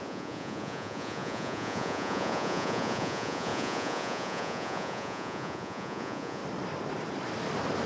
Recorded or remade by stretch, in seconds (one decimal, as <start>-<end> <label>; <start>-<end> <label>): 0.0-6.4 remade; 6.4-7.9 recorded